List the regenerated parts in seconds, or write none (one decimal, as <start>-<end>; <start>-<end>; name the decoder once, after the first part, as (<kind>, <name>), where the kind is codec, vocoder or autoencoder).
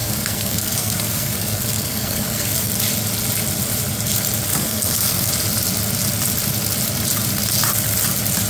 0.0-2.7 (codec, SNAC); 4.5-5.3